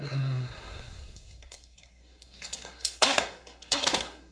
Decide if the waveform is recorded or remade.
remade